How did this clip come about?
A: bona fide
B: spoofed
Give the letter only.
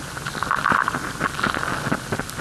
A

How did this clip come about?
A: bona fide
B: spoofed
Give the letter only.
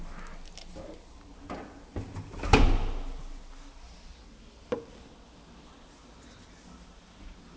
A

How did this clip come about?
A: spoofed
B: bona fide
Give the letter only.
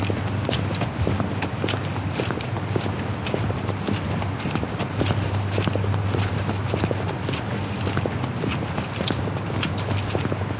B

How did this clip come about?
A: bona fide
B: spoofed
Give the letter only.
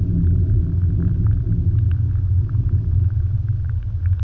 A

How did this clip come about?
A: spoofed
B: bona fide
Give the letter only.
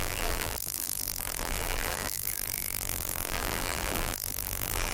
A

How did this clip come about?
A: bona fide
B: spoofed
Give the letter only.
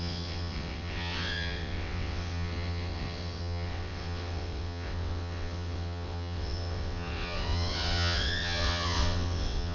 B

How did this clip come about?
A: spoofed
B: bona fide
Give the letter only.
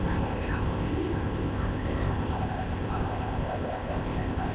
A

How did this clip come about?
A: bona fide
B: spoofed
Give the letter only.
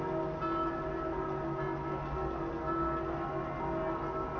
A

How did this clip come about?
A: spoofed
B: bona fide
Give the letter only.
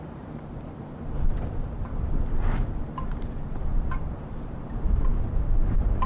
A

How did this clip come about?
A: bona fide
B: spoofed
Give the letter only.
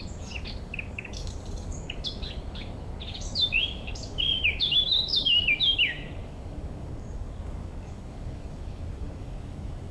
B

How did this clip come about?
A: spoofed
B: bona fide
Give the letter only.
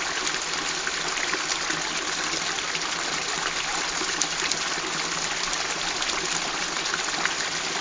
B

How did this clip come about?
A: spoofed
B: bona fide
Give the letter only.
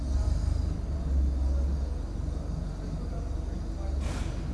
B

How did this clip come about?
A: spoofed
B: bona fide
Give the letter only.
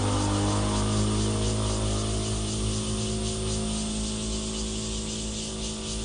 B